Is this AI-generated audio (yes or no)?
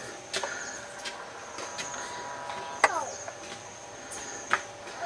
no